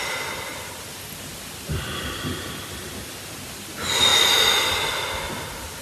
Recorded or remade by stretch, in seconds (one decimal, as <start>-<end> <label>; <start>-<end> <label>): 0.0-5.8 recorded